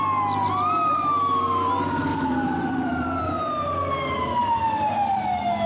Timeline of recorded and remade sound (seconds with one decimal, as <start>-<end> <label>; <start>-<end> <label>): 0.0-2.1 recorded; 2.1-3.2 remade; 3.2-4.4 recorded; 4.4-5.2 remade; 5.2-5.7 recorded